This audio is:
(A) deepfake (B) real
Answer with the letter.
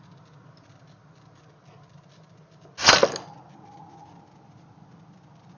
B